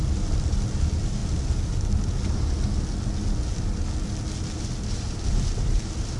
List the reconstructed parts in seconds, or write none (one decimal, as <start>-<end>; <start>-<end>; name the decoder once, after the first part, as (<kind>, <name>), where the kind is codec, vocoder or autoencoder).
0.0-1.2 (vocoder, BigVGAN v2); 4.6-6.2